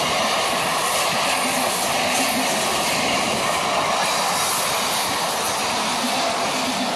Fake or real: real